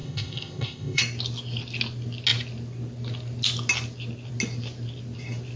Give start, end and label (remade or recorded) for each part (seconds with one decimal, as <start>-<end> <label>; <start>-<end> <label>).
0.0-1.0 remade; 1.0-5.6 recorded